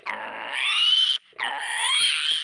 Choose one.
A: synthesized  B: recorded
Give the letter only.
B